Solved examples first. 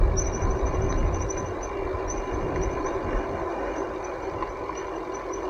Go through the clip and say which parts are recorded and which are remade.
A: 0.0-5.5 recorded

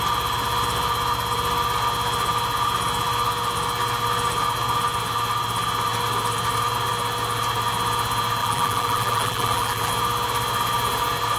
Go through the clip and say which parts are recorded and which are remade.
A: 0.0-8.4 recorded; 8.4-9.9 remade; 9.9-11.4 recorded

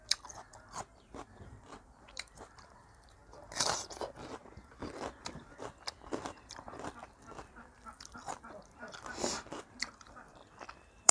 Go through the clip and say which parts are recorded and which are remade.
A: 0.0-3.2 remade; 3.2-5.2 recorded; 5.2-11.1 remade

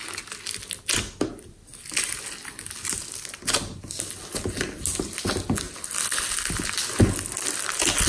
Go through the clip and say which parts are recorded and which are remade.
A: 0.0-8.1 recorded

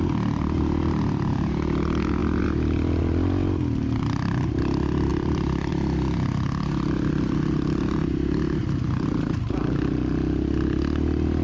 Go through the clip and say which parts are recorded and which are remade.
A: 0.0-2.2 recorded; 2.2-3.0 remade; 3.0-5.1 recorded; 5.1-5.7 remade; 5.7-11.4 recorded

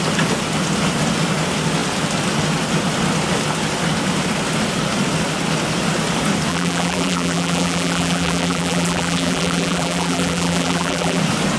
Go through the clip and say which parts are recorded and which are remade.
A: 0.0-6.5 recorded; 6.5-11.2 remade; 11.2-11.6 recorded